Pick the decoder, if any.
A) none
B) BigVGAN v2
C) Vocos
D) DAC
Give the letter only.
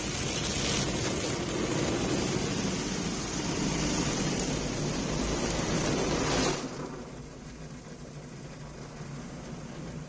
A